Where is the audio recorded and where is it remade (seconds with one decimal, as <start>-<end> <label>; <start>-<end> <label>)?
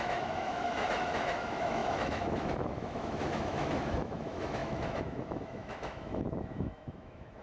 0.0-7.4 remade